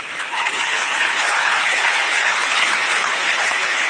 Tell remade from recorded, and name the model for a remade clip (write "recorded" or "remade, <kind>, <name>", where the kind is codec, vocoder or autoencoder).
remade, codec, HILCodec